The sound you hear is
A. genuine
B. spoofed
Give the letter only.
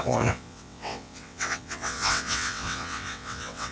B